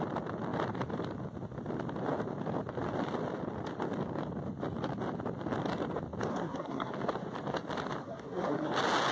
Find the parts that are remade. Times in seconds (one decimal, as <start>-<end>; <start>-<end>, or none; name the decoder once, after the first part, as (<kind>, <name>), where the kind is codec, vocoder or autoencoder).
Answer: 6.3-6.9 (codec, SNAC); 8.0-8.7